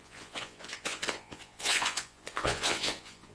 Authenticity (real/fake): fake